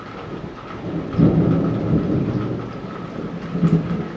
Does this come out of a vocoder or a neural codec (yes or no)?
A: no